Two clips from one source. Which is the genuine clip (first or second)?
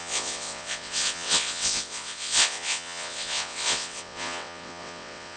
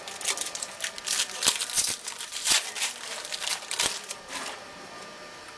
second